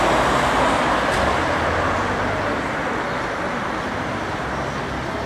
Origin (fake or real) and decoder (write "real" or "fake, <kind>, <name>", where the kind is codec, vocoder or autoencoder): real